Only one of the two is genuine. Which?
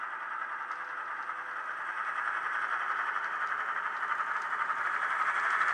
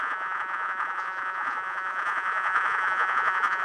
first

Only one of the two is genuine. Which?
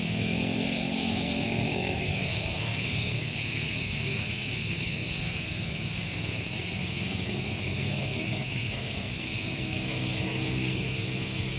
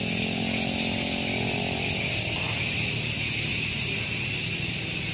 second